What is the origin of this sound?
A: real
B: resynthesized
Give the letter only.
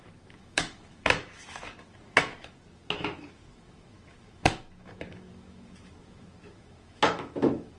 B